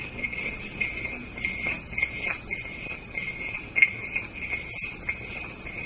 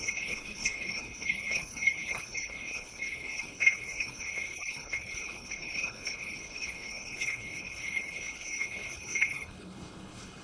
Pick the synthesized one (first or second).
second